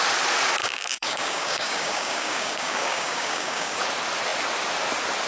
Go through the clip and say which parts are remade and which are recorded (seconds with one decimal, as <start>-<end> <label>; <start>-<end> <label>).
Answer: 0.0-0.6 recorded; 0.6-3.8 remade; 3.8-5.3 recorded